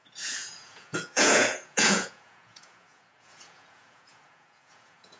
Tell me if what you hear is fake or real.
fake